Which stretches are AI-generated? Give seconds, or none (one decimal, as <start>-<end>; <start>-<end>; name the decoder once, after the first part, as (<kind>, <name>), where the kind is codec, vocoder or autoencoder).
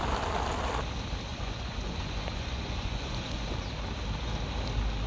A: 1.3-3.5 (vocoder, Vocos)